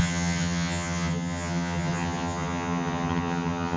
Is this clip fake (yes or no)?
yes